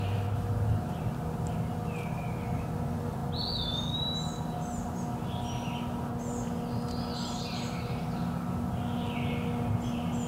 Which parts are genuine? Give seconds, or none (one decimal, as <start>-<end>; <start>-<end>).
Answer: 0.0-10.3